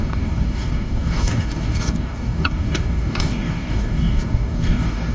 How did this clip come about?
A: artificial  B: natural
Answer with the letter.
A